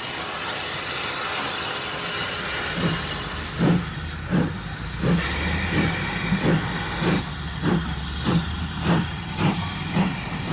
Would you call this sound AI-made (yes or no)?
no